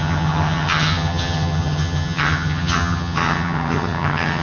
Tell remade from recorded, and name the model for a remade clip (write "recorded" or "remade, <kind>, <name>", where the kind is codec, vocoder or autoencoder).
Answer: remade, vocoder, HiFi-GAN